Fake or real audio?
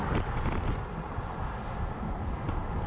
real